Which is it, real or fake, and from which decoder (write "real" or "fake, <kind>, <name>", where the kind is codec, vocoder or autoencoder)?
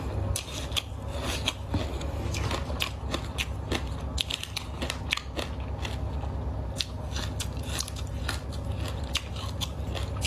real